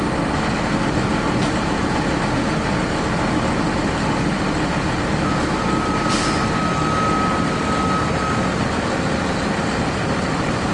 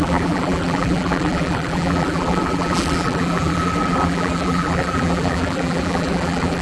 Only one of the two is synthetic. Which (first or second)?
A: second